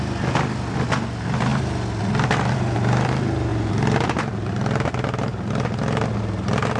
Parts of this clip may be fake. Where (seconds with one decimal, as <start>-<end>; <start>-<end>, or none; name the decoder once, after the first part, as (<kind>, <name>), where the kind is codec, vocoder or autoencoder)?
none